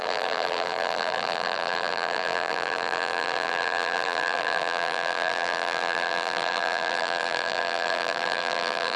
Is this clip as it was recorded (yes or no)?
no